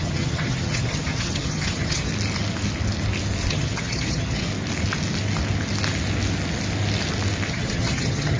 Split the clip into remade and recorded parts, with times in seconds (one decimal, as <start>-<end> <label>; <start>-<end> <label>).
0.0-2.1 remade; 2.1-3.5 recorded; 3.5-4.5 remade; 4.5-7.5 recorded; 7.5-8.4 remade